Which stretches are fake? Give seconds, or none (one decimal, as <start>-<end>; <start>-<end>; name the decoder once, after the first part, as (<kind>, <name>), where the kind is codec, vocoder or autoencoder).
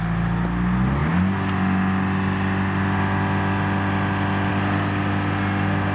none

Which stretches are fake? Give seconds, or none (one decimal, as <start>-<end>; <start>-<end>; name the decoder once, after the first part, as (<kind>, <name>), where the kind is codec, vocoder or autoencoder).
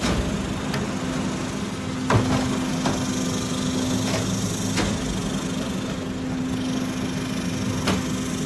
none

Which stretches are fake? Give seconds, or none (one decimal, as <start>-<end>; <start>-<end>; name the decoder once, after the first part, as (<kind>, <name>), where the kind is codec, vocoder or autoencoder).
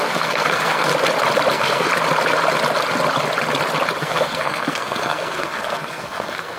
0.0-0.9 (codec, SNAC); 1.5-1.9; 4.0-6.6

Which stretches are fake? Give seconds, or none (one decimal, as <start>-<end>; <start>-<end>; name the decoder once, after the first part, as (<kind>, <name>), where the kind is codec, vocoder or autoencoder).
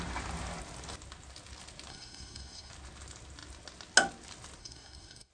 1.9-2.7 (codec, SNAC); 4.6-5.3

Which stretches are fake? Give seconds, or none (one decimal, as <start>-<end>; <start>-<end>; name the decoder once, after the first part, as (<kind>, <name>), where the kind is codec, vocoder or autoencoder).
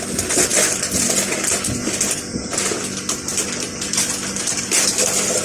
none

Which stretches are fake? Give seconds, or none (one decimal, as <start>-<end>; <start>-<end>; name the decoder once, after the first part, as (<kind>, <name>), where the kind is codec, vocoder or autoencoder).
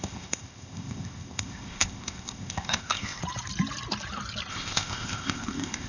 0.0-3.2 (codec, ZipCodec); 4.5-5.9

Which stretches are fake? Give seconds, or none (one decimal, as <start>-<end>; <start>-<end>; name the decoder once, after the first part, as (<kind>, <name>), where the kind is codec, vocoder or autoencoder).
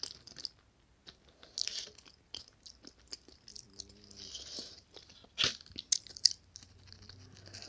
none